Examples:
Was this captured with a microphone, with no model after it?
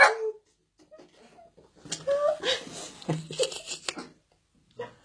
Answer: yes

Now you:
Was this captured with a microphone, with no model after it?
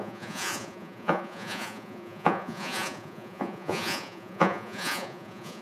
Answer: no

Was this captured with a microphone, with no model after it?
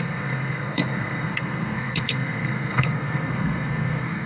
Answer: no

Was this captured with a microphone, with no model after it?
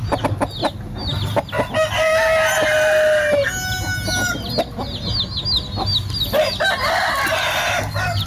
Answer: yes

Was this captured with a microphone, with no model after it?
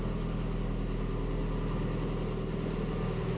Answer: yes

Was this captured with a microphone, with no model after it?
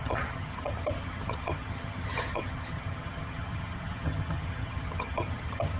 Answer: no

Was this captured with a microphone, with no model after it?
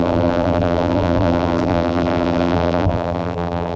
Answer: no